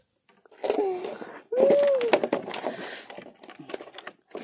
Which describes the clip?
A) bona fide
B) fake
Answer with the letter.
A